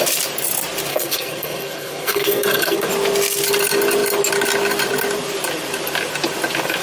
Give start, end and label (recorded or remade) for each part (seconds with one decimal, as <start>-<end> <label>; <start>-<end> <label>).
0.0-0.9 recorded; 0.9-2.9 remade; 2.9-6.8 recorded